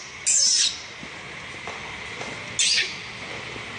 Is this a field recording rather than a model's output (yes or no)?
yes